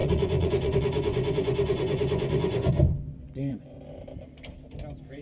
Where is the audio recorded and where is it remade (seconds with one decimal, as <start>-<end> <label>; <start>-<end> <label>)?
0.0-2.7 remade; 2.7-3.2 recorded; 3.2-3.8 remade; 3.8-5.2 recorded